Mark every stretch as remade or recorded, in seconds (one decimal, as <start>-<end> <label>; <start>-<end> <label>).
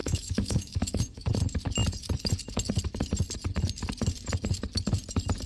0.0-1.3 remade; 1.3-5.5 recorded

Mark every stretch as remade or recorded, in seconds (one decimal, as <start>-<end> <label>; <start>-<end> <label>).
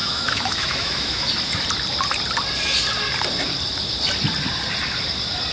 0.0-1.3 remade; 1.3-5.5 recorded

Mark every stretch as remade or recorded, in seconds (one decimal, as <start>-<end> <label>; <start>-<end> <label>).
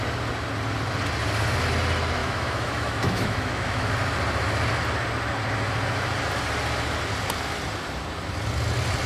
0.0-2.2 recorded; 2.2-3.9 remade; 3.9-9.1 recorded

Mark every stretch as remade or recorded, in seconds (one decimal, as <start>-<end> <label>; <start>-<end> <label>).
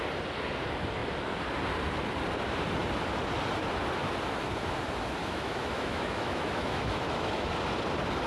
0.0-5.2 recorded; 5.2-7.5 remade; 7.5-8.3 recorded